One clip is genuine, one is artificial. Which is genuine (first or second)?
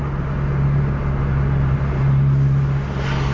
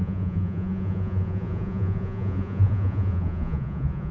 first